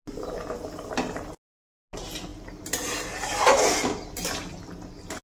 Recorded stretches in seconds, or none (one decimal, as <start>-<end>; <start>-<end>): 0.0-5.2